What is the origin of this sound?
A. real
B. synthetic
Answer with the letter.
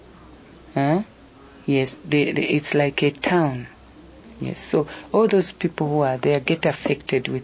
A